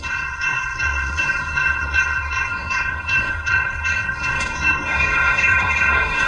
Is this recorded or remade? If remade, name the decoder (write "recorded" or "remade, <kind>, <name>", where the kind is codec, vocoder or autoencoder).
remade, codec, SNAC